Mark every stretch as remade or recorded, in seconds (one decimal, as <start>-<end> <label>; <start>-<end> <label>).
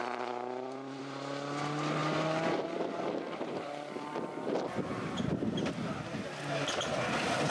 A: 0.0-1.0 remade; 1.0-2.0 recorded; 2.0-5.7 remade; 5.7-7.5 recorded